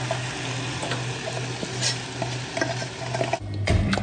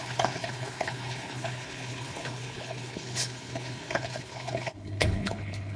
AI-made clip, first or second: second